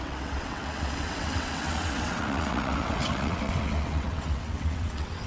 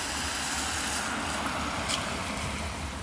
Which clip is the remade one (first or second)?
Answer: first